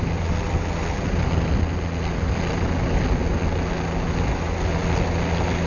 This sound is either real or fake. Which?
real